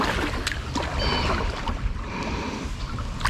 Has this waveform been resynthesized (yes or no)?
no